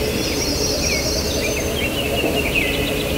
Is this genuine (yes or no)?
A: yes